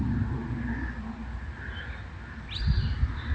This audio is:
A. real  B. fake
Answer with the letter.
A